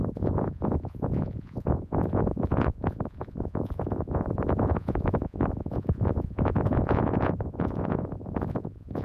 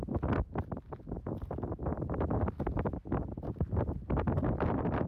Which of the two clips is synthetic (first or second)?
first